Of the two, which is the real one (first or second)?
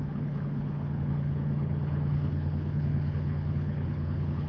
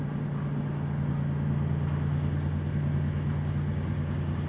second